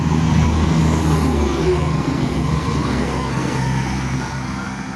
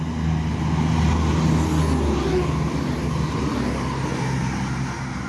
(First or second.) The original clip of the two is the second